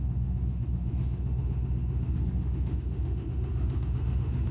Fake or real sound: fake